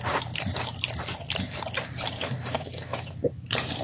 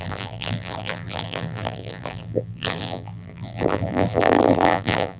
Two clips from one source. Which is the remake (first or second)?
second